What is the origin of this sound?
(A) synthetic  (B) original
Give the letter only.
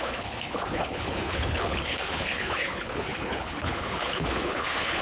A